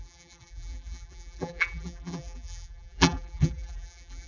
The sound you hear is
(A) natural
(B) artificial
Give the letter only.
B